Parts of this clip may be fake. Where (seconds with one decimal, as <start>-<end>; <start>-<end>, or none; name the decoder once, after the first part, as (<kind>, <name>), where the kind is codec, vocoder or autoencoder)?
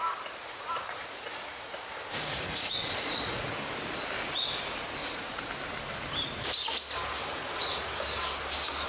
0.4-3.5 (vocoder, Vocos); 5.0-5.5; 7.2-7.8